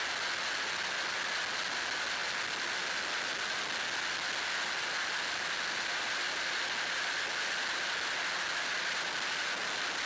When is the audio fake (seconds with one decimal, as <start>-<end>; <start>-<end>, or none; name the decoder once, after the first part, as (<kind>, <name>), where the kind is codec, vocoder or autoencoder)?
none